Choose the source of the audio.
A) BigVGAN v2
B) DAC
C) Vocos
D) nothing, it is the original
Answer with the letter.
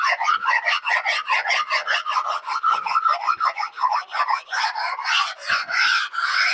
C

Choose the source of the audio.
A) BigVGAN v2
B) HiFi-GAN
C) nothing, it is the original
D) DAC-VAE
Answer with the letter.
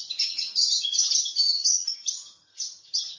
B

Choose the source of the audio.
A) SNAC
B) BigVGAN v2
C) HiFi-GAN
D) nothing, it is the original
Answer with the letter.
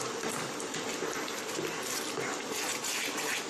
D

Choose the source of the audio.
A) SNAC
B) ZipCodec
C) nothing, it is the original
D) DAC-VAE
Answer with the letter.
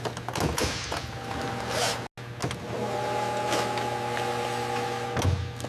C